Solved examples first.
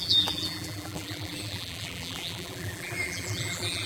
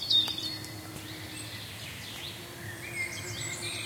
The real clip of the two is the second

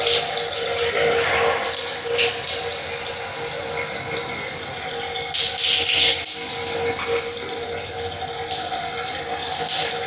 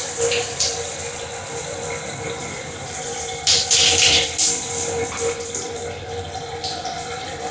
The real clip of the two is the first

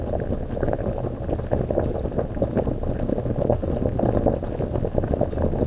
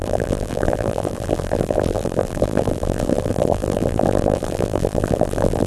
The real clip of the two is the first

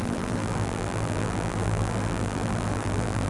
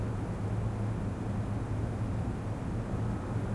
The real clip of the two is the second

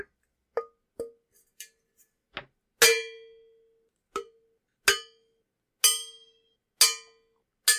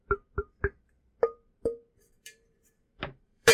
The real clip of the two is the first